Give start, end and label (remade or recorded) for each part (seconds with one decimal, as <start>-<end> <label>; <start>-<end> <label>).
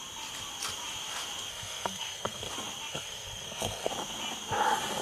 0.0-1.5 recorded; 1.5-2.5 remade; 2.5-2.9 recorded; 2.9-3.9 remade; 3.9-5.0 recorded